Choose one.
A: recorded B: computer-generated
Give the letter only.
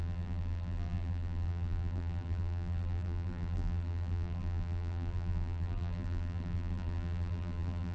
B